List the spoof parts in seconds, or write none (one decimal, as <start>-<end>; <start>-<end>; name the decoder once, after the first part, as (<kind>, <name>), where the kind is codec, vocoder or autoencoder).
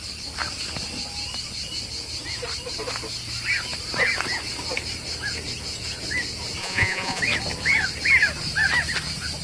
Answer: 6.6-7.2 (vocoder, Vocos)